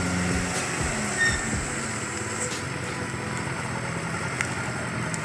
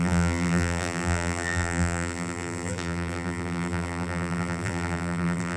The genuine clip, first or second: first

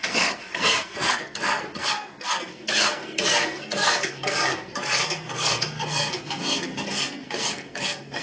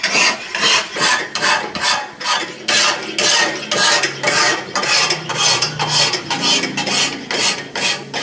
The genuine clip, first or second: second